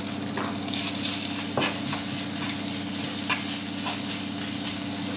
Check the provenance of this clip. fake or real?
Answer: real